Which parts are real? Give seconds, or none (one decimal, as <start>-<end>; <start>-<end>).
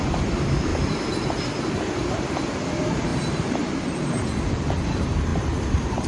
0.7-1.7